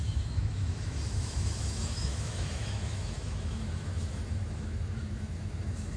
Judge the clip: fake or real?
fake